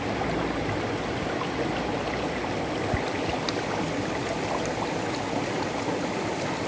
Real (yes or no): yes